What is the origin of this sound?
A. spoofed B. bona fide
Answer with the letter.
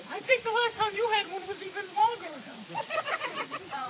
A